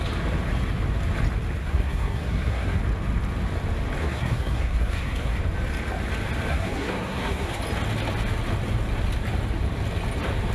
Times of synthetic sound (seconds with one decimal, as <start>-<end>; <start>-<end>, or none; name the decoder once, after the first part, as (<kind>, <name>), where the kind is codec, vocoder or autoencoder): 1.6-2.8 (codec, SNAC); 4.0-5.4; 6.5-7.6